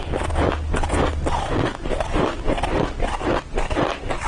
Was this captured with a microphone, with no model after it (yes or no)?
yes